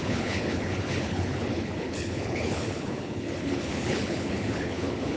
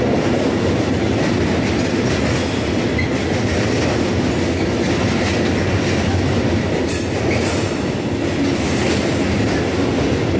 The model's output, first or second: first